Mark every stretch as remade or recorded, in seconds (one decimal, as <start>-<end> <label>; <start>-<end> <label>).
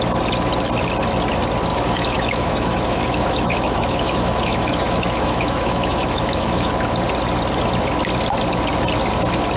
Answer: 0.0-1.7 recorded; 1.7-6.7 remade; 6.7-9.6 recorded